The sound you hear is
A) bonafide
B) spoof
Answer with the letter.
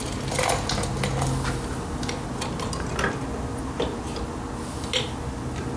A